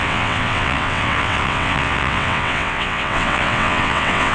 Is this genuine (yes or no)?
no